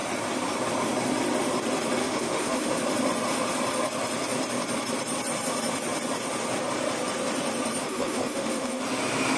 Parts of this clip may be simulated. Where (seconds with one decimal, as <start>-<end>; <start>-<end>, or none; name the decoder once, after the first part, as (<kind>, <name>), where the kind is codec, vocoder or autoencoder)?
2.0-2.8 (autoencoder, DAC-VAE); 7.8-8.8